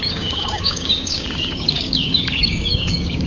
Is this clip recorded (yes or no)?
no